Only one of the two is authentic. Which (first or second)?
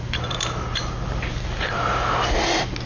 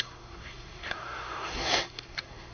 first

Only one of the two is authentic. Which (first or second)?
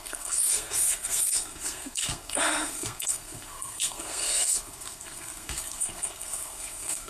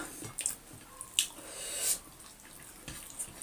second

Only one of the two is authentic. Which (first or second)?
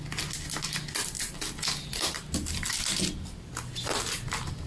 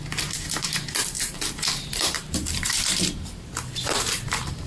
first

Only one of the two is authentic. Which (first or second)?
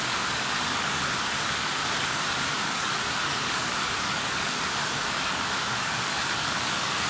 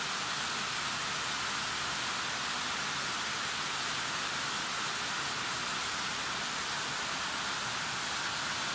second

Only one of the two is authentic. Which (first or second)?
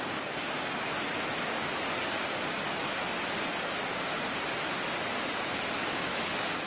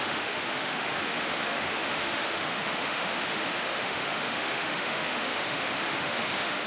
first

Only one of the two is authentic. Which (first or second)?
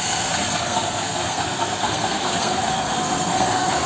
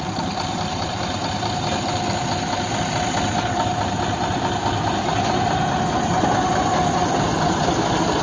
second